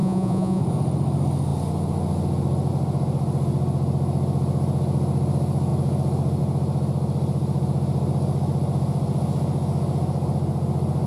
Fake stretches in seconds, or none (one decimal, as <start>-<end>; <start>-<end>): 0.0-0.6